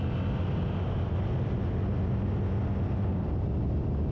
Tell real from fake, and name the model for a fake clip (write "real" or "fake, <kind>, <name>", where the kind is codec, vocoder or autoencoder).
real